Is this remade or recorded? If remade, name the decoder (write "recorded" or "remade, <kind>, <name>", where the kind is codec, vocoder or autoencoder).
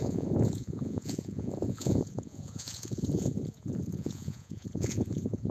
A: remade, vocoder, Vocos